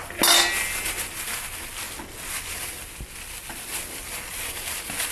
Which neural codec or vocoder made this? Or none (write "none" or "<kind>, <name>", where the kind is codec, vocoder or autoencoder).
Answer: none